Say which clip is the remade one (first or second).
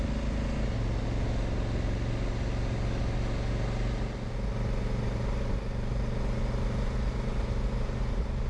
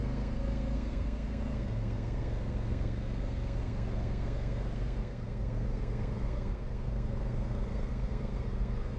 second